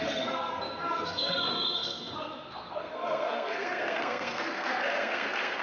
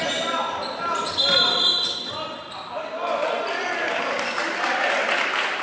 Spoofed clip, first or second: first